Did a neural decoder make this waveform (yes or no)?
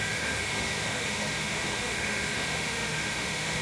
yes